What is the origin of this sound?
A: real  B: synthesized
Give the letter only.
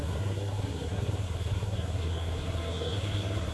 B